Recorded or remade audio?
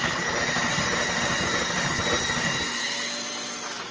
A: recorded